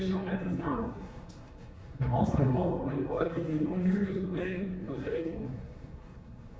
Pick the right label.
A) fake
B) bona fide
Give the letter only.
A